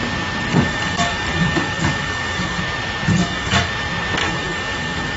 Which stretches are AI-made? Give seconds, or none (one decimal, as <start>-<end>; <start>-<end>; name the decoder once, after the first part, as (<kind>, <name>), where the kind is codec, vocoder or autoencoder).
0.5-2.6 (codec, DAC); 3.1-3.7; 4.2-5.2